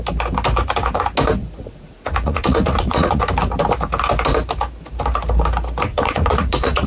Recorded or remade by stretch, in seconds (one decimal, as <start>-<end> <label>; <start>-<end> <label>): 0.0-1.4 recorded; 1.4-3.2 remade; 3.2-5.9 recorded; 5.9-6.9 remade